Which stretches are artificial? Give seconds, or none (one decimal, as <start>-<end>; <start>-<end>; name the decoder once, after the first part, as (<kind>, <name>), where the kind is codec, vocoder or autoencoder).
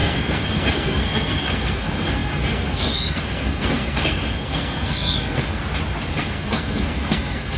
0.0-5.6 (codec, SNAC); 6.1-7.6